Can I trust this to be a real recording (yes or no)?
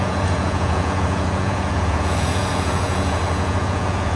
no